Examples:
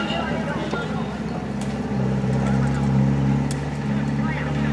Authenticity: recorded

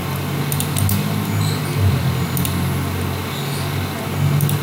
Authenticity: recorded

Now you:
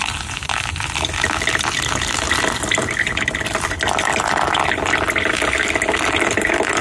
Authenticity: recorded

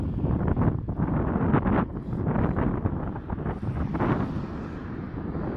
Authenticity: recorded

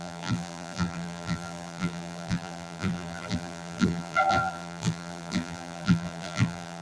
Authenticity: remade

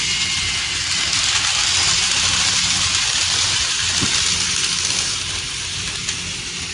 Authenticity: recorded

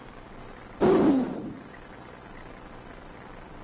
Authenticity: recorded